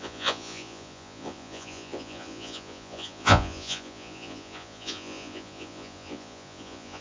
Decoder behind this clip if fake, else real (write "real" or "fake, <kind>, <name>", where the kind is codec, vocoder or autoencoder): fake, vocoder, Vocos